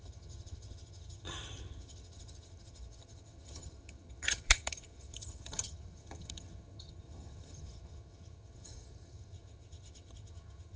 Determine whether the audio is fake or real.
fake